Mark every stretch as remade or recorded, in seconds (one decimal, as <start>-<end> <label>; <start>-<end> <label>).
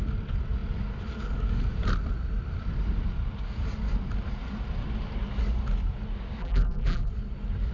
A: 0.0-6.4 recorded; 6.4-7.1 remade; 7.1-7.7 recorded